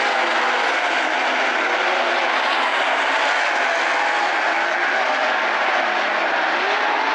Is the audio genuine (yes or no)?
yes